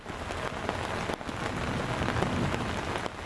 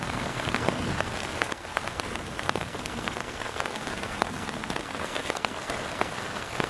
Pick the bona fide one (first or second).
first